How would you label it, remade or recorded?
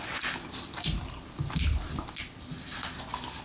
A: recorded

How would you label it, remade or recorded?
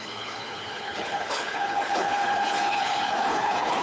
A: remade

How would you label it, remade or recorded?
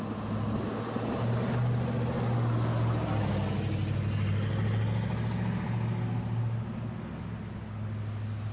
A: recorded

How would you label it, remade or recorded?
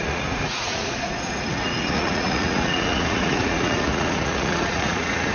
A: remade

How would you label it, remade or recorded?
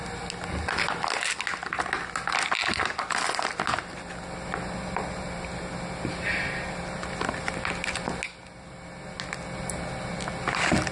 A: recorded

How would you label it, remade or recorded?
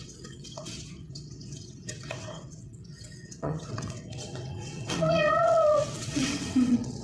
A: remade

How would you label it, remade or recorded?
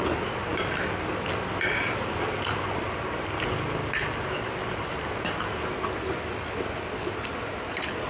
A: recorded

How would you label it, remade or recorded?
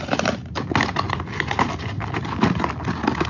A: recorded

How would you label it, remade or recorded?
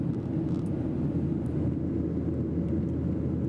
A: recorded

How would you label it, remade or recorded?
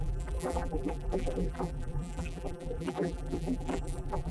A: remade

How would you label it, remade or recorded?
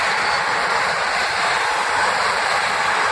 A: remade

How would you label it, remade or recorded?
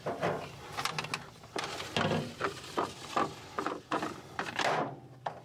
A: recorded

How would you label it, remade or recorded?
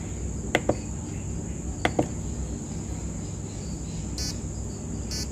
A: recorded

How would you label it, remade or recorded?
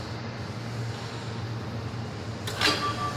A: recorded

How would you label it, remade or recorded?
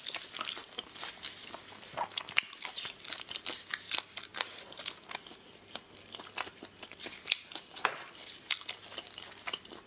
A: recorded